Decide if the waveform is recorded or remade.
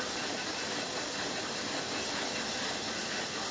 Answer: recorded